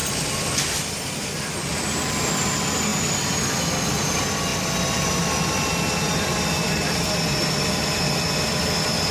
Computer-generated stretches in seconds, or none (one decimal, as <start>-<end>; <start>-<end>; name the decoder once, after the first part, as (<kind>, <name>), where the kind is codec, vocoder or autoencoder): none

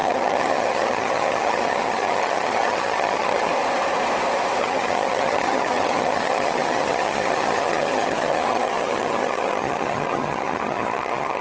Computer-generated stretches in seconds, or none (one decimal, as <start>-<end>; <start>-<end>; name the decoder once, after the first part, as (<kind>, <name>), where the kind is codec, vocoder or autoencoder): 0.0-3.5 (vocoder, HiFi-GAN); 4.6-11.4

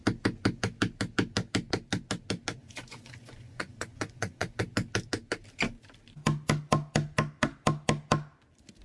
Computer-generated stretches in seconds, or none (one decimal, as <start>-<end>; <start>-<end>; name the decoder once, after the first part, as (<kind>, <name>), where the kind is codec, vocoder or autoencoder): 2.6-4.6 (vocoder, Vocos)

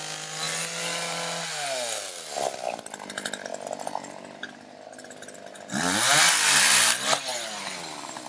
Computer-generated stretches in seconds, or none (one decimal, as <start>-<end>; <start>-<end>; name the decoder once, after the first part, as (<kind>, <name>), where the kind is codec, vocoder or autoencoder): none

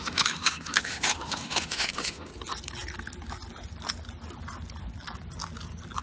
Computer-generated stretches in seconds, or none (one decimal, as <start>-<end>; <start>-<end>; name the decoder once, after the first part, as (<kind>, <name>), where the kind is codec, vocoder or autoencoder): 0.0-2.3 (autoencoder, DAC-VAE)